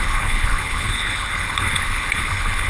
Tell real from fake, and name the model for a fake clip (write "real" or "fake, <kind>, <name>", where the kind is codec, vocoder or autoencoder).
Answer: fake, codec, HILCodec